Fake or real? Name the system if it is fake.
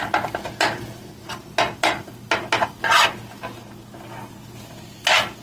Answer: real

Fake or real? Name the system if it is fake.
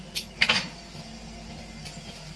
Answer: real